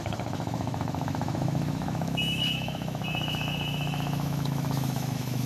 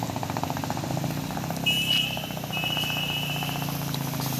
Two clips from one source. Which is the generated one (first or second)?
first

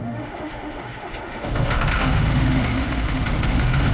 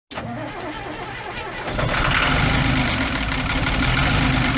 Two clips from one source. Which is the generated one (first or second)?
first